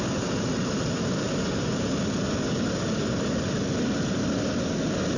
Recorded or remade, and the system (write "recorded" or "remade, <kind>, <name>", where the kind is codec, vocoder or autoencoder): recorded